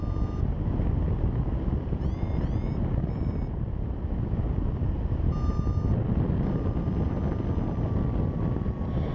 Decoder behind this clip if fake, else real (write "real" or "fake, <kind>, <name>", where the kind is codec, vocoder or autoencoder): real